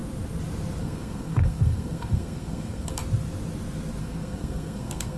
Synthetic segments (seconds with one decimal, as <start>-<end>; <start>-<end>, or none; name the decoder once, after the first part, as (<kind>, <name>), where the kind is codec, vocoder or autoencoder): 0.8-3.0 (codec, SNAC); 4.0-5.2